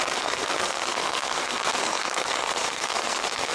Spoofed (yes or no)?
yes